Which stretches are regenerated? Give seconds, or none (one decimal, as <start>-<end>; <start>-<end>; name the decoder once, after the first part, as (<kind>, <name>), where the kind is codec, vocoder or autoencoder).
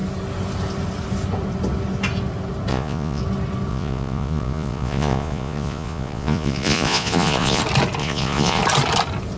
2.7-3.2 (vocoder, Vocos); 3.7-7.6; 8.0-8.6